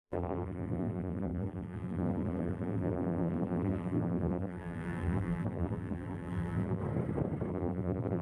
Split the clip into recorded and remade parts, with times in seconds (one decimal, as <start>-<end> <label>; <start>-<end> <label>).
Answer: 0.0-6.8 remade; 6.8-7.5 recorded; 7.5-8.2 remade